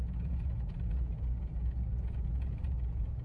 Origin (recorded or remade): remade